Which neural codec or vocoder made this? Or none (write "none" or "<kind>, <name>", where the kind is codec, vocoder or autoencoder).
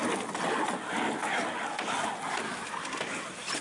none